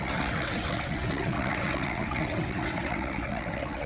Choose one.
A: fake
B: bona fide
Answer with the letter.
A